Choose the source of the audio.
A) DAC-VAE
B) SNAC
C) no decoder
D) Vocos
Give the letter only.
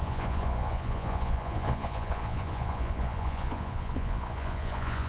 D